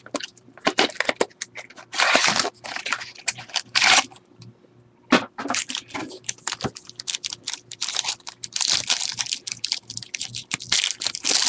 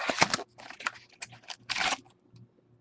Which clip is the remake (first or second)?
first